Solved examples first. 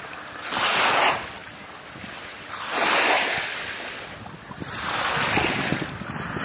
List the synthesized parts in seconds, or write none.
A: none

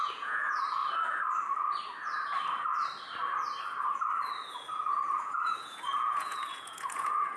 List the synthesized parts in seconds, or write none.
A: 0.0-0.8 (vocoder, Vocos); 5.2-7.4

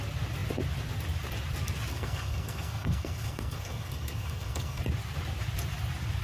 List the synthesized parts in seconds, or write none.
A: 1.9-4.8 (codec, SNAC)

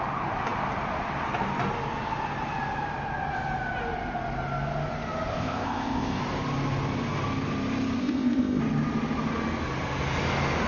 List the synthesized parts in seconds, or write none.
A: 5.3-6.2 (codec, ZipCodec); 8.0-8.6

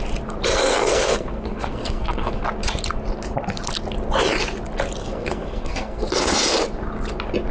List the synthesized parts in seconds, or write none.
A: 0.5-2.3 (codec, SNAC); 5.0-6.1